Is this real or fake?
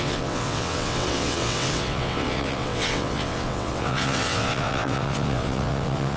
fake